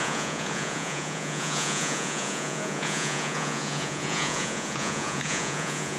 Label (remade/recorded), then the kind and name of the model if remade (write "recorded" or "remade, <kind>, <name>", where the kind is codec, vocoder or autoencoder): remade, vocoder, Vocos